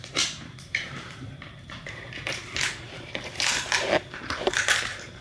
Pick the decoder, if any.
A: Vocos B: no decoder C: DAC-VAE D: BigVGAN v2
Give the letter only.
D